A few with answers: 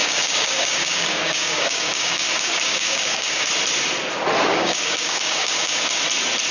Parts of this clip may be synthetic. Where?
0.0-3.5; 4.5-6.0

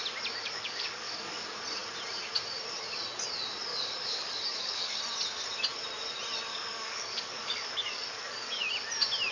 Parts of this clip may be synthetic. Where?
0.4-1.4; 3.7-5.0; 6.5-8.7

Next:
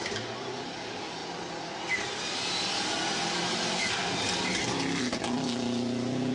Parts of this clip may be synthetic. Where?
none

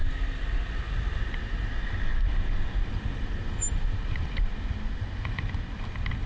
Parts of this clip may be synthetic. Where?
none

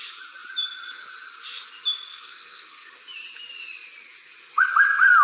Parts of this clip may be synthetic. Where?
2.1-2.9

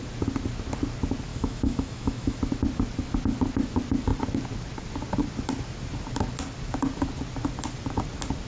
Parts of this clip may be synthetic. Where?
1.3-2.4

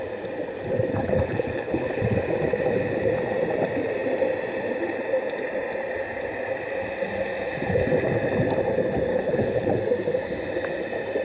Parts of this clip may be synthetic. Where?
0.9-2.0; 9.1-9.8

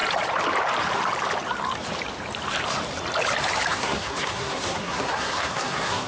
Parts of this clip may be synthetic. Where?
3.7-6.1